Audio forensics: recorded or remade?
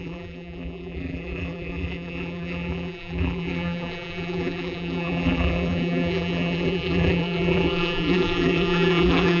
remade